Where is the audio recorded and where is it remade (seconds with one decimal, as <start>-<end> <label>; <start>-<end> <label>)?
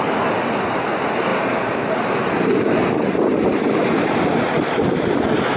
0.0-5.6 recorded